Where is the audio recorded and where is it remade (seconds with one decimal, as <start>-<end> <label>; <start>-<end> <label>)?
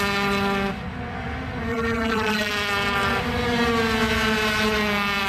0.0-1.7 recorded; 1.7-2.5 remade; 2.5-5.3 recorded